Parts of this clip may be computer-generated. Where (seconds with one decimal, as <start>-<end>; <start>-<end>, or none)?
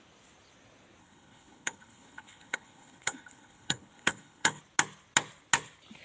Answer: 1.0-4.6